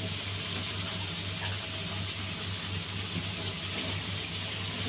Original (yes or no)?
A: yes